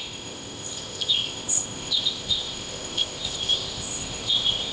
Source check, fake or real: fake